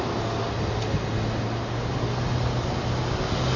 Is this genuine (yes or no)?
yes